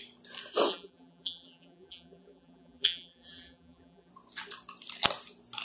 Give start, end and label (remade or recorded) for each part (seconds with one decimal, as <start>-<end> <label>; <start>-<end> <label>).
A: 0.0-0.7 recorded; 0.7-4.1 remade; 4.1-5.6 recorded